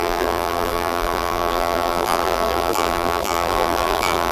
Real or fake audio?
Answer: fake